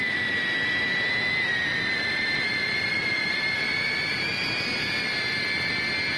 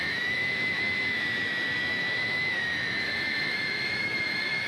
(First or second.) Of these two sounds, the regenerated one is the second